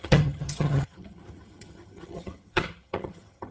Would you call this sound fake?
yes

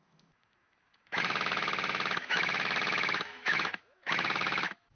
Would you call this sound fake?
yes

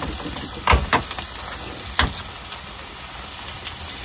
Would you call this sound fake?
no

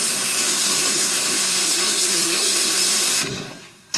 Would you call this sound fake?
yes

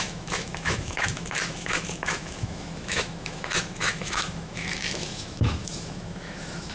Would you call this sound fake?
yes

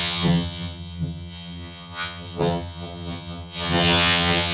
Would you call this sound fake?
yes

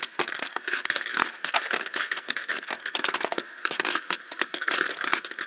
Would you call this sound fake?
yes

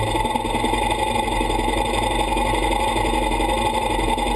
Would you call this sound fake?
no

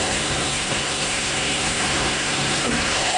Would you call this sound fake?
yes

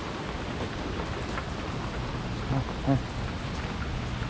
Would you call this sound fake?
no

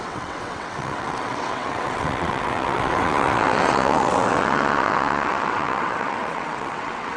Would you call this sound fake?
yes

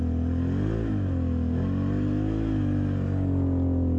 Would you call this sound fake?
no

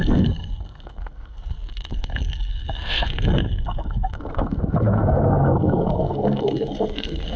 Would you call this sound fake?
yes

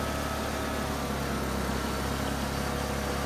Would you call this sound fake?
no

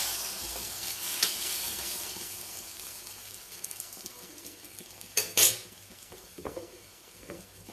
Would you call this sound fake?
yes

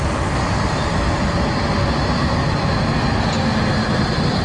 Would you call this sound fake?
no